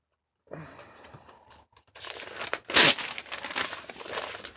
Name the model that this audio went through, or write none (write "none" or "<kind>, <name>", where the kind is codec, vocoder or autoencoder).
none